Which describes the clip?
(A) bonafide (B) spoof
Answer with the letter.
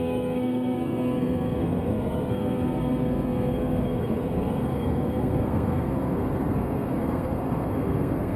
B